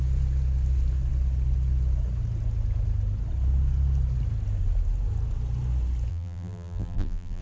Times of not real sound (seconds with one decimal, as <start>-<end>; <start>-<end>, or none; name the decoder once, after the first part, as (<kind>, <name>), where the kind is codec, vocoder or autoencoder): 6.1-7.4 (vocoder, BigVGAN v2)